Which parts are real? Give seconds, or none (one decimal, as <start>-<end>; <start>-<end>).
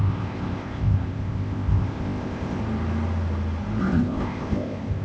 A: 2.6-3.8